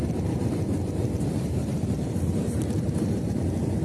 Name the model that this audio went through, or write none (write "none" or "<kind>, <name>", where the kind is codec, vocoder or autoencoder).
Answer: vocoder, BigVGAN v2